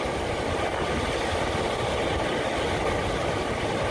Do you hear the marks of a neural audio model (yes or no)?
no